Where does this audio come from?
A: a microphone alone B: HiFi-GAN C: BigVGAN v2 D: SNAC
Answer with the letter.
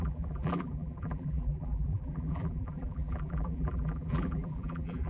C